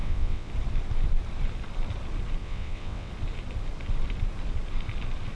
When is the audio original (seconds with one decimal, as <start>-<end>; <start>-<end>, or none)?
0.5-2.4; 3.1-5.4